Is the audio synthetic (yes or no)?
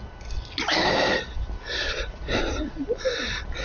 no